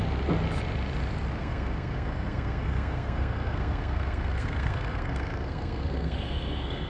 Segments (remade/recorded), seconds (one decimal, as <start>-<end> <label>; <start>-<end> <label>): 0.0-1.4 recorded; 1.4-6.9 remade